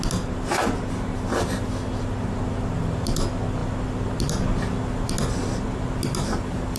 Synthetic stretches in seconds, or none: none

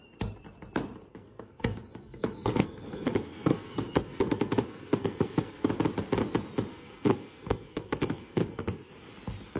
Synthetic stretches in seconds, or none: 1.1-5.7; 6.7-8.9

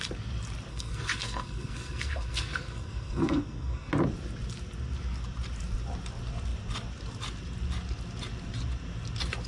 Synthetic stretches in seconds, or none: 0.7-3.9

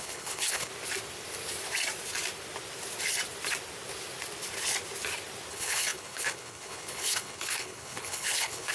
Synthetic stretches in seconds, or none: 0.0-0.7; 5.5-8.7

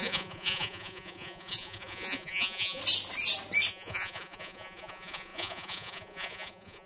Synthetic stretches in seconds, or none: 0.0-2.8; 3.7-6.9

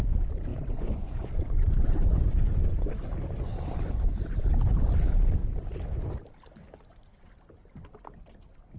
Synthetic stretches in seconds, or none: 0.5-2.9

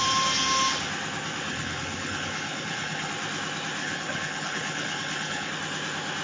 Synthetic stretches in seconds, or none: 1.5-3.1; 3.8-5.5

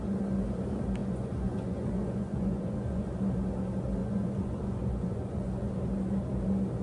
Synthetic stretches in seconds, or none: 1.0-3.1; 4.0-5.7